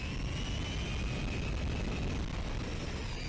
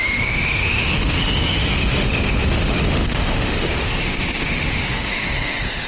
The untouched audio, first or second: first